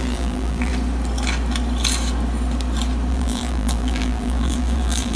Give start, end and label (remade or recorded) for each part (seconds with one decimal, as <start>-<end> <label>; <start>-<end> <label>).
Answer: 0.0-0.7 remade; 0.7-3.1 recorded; 3.1-5.2 remade